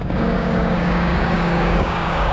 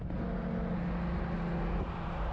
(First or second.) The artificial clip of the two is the first